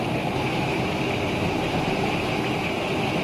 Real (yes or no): yes